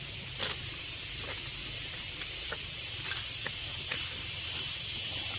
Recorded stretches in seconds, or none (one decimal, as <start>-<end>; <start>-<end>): 0.0-1.6; 4.8-5.4